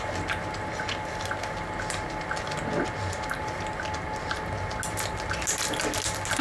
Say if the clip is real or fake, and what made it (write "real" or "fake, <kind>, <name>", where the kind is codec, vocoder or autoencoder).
real